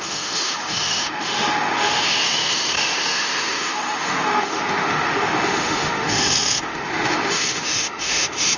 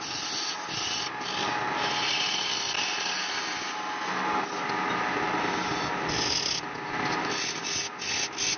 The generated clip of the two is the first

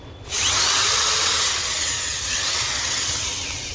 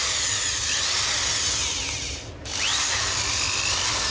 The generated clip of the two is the first